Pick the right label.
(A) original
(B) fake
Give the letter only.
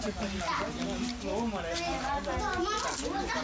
A